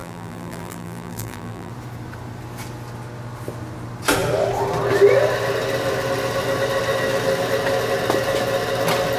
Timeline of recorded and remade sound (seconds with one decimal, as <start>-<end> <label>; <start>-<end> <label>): 0.0-1.7 remade; 1.7-9.2 recorded